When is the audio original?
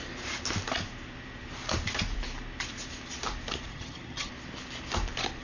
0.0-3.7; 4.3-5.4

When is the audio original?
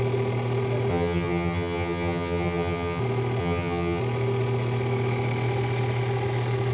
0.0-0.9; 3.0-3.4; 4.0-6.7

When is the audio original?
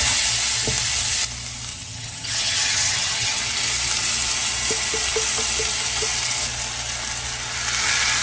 0.0-1.7; 3.4-8.2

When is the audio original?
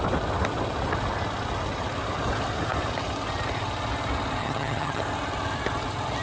0.0-4.4; 5.0-6.2